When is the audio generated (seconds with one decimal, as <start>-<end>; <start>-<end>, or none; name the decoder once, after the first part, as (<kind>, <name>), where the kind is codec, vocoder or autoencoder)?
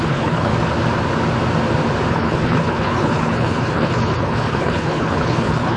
0.0-0.5 (codec, HILCodec); 2.1-5.8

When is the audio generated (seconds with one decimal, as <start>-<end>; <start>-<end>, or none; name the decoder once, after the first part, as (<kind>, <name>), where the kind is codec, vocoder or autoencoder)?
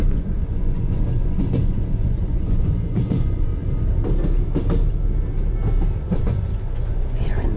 0.0-3.6 (vocoder, Vocos); 6.0-7.6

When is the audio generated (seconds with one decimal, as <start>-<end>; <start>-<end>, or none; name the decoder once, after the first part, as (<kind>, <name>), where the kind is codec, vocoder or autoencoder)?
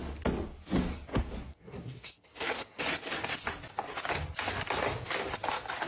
1.1-2.8 (codec, SNAC)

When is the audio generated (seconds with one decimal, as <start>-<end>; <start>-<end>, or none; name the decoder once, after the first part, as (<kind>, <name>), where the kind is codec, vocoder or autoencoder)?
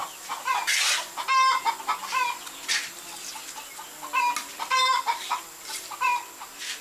4.4-5.4 (vocoder, BigVGAN v2); 6.1-6.8